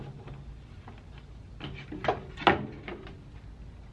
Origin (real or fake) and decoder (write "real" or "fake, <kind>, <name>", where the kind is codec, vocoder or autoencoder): real